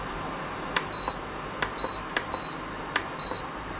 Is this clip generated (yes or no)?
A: yes